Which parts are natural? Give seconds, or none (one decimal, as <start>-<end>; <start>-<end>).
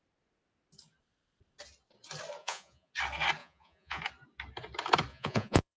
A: 0.0-2.4; 2.9-3.4; 4.0-5.1